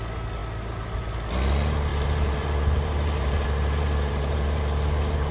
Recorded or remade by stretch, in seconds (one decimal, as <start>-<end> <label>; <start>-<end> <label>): 0.0-1.9 recorded; 1.9-5.3 remade